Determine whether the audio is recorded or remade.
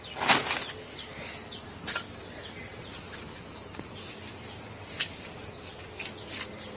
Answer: recorded